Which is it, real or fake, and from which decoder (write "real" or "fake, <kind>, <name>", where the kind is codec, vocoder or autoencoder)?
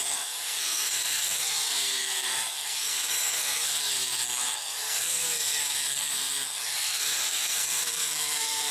fake, codec, SNAC